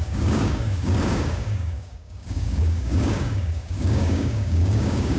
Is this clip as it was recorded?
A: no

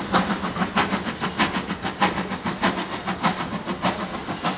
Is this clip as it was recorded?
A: yes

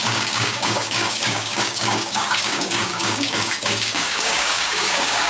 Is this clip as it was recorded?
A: no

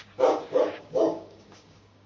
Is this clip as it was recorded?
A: no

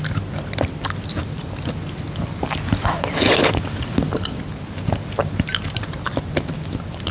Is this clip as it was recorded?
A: yes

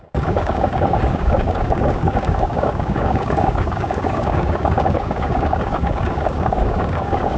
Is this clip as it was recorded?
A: no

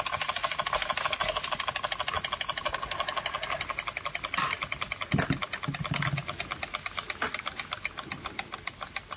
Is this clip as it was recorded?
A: yes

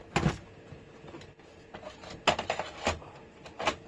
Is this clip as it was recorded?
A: yes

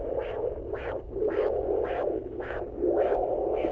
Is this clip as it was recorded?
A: no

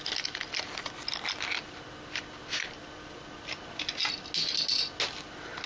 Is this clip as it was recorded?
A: yes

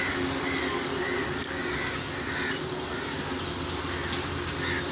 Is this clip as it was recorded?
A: yes